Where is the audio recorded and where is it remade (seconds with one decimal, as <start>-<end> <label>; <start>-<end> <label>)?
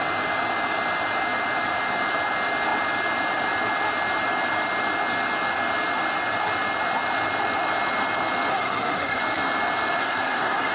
0.0-8.5 recorded; 8.5-9.2 remade; 9.2-10.0 recorded; 10.0-10.7 remade